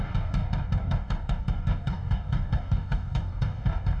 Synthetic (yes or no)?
yes